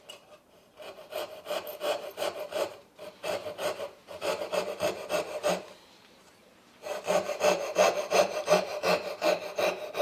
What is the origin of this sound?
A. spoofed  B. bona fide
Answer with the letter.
A